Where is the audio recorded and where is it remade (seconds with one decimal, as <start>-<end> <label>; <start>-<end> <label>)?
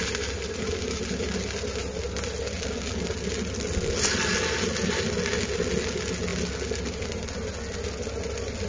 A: 0.0-8.7 recorded